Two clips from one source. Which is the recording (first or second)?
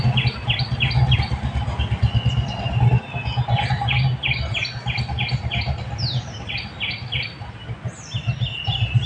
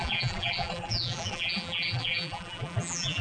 first